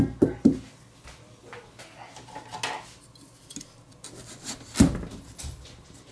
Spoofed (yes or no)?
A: no